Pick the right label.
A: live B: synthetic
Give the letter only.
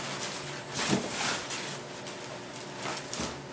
A